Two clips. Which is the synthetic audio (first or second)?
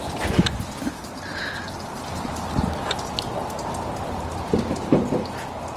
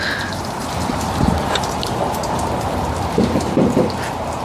second